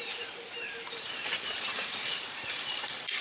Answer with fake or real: fake